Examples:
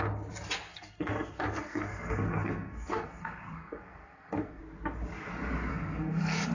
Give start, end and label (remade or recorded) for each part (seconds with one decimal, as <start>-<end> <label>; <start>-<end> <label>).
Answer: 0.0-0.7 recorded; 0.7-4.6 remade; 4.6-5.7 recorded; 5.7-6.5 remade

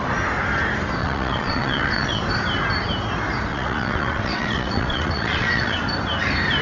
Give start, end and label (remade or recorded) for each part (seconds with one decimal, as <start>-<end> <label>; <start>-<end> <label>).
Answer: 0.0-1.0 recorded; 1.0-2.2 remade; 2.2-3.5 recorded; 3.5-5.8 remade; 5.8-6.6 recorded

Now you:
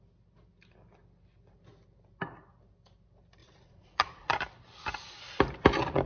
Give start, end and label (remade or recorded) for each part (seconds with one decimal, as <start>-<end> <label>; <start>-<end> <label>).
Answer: 0.0-3.4 recorded; 3.4-4.4 remade; 4.4-6.1 recorded

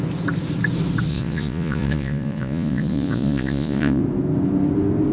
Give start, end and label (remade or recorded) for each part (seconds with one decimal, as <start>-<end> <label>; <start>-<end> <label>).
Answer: 0.0-1.1 recorded; 1.1-4.0 remade; 4.0-5.1 recorded

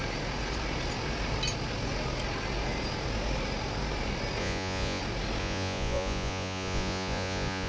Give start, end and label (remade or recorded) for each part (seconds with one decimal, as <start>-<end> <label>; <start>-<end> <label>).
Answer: 0.0-4.4 recorded; 4.4-5.0 remade; 5.0-5.4 recorded; 5.4-7.7 remade

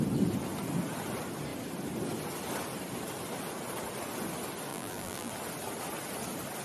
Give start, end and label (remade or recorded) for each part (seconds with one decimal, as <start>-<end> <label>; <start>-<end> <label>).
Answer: 0.0-4.7 recorded; 4.7-5.3 remade; 5.3-6.6 recorded

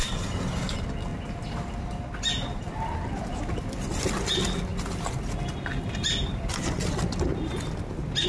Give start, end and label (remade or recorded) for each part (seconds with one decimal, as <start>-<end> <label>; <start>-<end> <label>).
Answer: 0.0-8.3 recorded